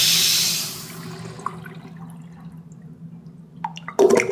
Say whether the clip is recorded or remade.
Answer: recorded